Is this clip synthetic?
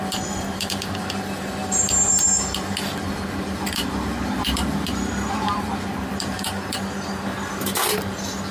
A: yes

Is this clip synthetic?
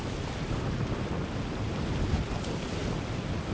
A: no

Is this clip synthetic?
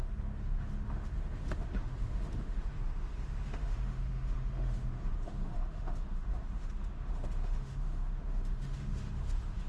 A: yes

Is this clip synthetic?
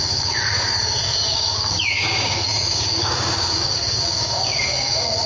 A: yes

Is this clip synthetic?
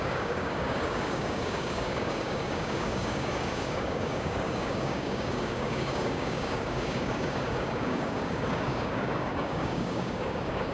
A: yes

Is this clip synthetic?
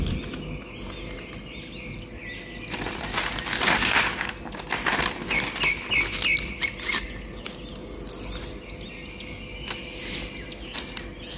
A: no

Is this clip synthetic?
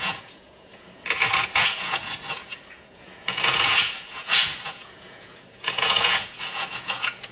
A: yes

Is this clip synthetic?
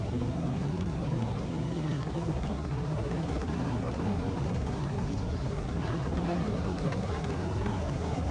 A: yes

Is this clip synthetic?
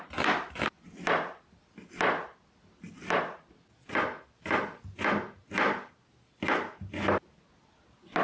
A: no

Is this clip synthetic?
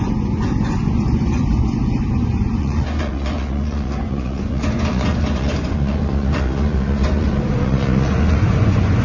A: yes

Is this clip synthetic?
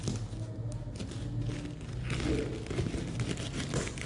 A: no